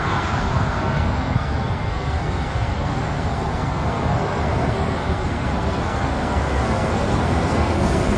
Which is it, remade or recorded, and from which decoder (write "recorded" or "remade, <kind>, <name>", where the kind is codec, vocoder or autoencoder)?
remade, codec, SNAC